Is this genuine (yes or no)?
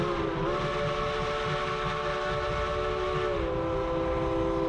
yes